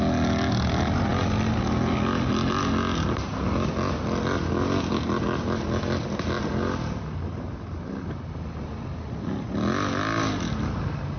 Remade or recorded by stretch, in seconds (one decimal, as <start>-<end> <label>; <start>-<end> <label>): 0.0-11.2 recorded